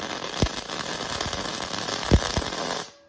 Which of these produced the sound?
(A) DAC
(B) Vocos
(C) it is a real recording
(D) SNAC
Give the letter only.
C